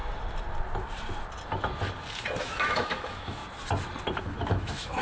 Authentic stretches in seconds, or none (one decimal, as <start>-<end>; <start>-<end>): 0.0-2.4; 3.4-4.2